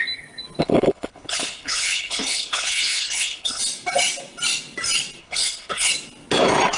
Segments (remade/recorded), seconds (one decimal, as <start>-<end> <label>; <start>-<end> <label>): 0.0-0.6 recorded; 0.6-3.6 remade; 3.6-5.2 recorded; 5.2-5.9 remade; 5.9-6.8 recorded